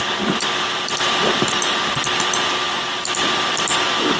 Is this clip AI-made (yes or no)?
no